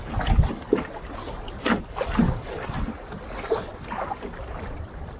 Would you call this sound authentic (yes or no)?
yes